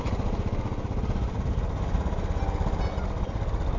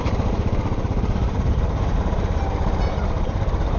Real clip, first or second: first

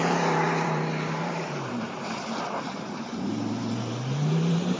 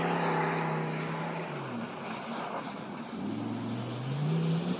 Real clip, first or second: second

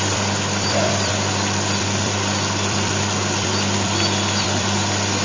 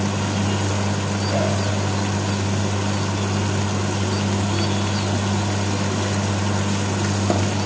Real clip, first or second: second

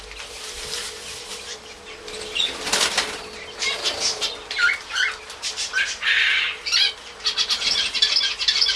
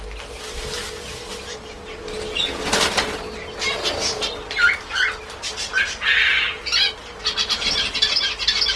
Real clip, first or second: second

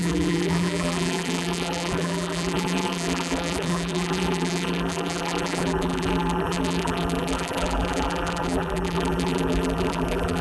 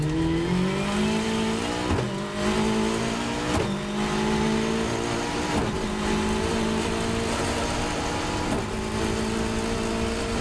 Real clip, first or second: second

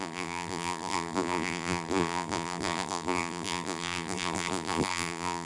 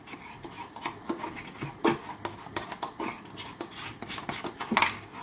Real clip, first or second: second